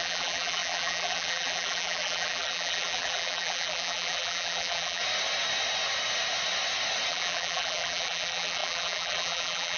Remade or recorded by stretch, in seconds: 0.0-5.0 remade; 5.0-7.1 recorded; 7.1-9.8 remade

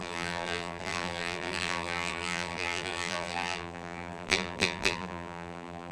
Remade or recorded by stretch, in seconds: 0.0-5.9 remade

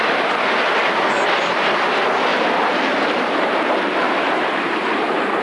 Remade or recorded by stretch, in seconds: 0.0-2.3 recorded; 2.3-5.4 remade

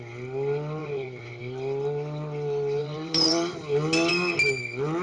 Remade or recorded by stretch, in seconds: 0.0-0.8 recorded; 0.8-1.4 remade; 1.4-2.8 recorded; 2.8-3.5 remade; 3.5-5.0 recorded

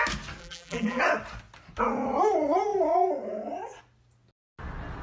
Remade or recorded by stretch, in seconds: 0.0-0.4 recorded; 0.4-1.0 remade; 1.0-5.0 recorded

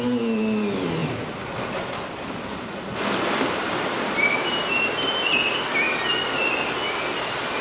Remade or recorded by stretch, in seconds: 0.0-1.0 recorded; 1.0-5.3 remade; 5.3-7.6 recorded

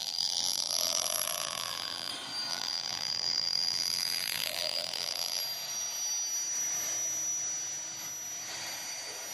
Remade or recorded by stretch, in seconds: 0.0-2.1 remade; 2.1-2.5 recorded; 2.5-5.4 remade; 5.4-9.3 recorded